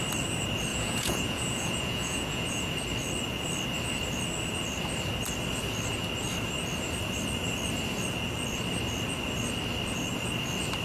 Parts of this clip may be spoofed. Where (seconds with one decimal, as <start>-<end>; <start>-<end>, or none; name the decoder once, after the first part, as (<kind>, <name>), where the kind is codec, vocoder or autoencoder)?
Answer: 0.7-2.6 (vocoder, Vocos)